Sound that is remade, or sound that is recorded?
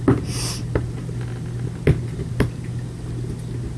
recorded